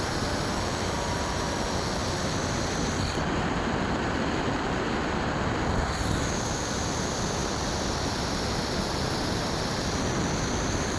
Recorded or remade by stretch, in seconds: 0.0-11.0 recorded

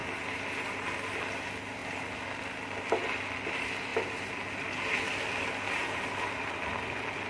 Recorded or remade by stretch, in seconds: 0.0-7.3 recorded

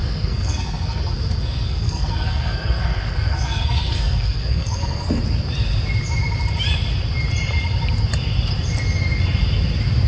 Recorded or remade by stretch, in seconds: 0.0-5.2 remade; 5.2-10.1 recorded

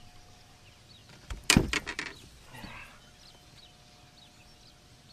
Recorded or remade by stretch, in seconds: 0.0-5.1 recorded

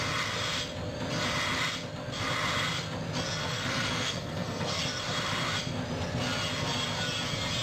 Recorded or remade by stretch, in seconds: 0.0-3.4 recorded; 3.4-4.8 remade; 4.8-7.6 recorded

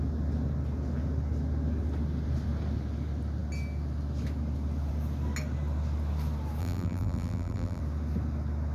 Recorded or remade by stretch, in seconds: 0.0-6.6 recorded; 6.6-7.8 remade; 7.8-8.7 recorded